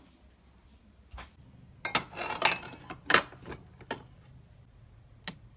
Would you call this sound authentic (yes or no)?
yes